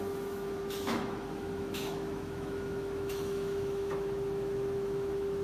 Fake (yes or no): yes